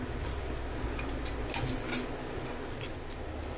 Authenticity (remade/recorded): recorded